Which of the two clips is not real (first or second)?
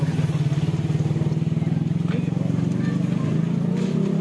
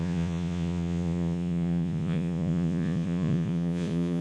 second